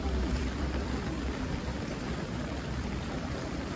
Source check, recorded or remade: recorded